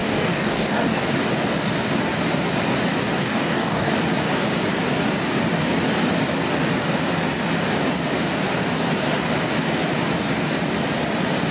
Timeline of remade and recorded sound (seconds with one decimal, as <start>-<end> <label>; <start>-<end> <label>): 0.0-1.0 remade; 1.0-3.2 recorded; 3.2-3.9 remade; 3.9-11.5 recorded